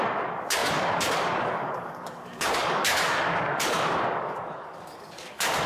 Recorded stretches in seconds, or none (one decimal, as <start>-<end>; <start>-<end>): none